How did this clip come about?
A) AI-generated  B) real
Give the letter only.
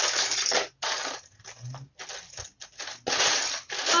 B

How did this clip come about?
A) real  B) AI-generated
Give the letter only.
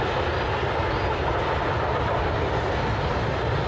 A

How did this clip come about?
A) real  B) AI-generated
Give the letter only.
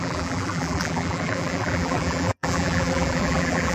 B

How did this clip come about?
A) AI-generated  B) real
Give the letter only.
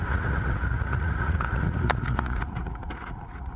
A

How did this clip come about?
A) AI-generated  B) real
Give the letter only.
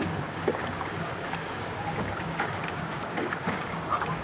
A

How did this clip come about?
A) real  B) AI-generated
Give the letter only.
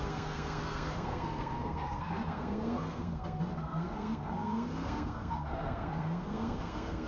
B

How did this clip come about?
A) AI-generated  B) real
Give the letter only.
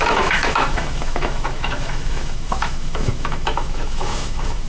A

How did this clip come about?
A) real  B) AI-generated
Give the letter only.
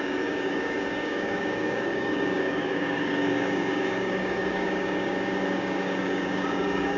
B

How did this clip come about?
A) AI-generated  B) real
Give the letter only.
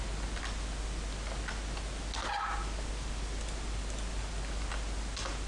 B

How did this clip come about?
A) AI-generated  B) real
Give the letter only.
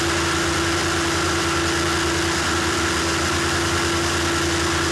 B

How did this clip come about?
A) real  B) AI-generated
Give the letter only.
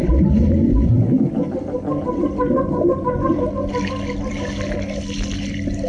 A